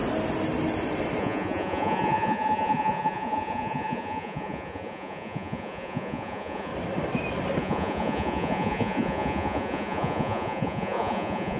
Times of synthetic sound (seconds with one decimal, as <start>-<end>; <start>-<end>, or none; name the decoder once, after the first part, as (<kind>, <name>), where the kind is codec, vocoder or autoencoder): 1.2-6.7 (vocoder, Vocos); 7.6-11.6